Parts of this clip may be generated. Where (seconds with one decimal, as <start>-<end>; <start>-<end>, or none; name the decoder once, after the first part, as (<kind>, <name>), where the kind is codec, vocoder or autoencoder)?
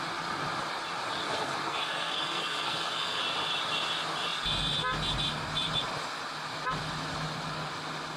1.2-3.2 (codec, SNAC)